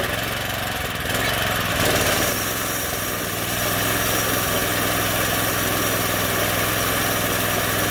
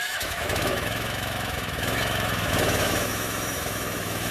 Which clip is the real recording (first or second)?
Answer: first